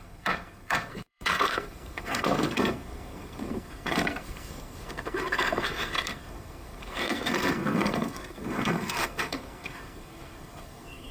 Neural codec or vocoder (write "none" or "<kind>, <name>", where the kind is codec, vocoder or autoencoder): codec, SNAC